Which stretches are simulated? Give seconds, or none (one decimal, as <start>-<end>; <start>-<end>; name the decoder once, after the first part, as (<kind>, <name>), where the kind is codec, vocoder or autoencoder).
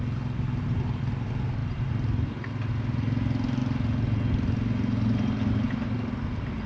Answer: none